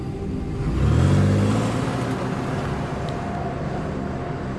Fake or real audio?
real